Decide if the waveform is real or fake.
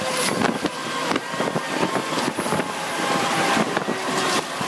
fake